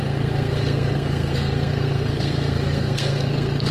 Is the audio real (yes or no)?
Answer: no